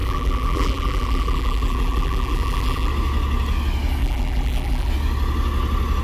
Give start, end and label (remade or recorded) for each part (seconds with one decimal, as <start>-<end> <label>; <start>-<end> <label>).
0.0-2.9 remade; 2.9-4.0 recorded; 4.0-4.9 remade; 4.9-6.0 recorded